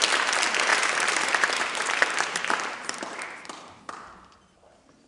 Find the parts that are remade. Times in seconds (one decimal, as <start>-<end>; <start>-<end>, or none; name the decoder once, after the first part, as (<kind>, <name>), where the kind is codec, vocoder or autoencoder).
0.7-3.8 (vocoder, BigVGAN v2)